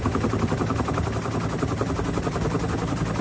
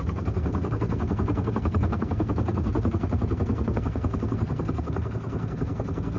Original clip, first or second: first